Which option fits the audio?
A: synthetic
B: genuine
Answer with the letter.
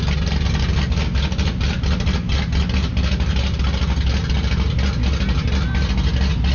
B